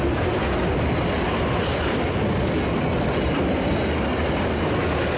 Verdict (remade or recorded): recorded